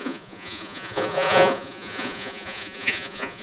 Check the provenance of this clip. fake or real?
fake